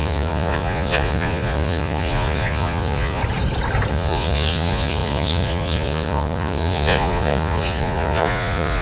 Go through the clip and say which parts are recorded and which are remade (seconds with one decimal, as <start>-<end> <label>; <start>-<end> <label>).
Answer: 0.0-3.2 remade; 3.2-3.9 recorded; 3.9-8.8 remade